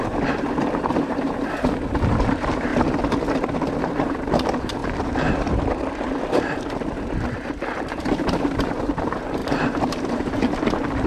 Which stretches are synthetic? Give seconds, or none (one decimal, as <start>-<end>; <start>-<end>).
0.0-2.7; 3.8-11.1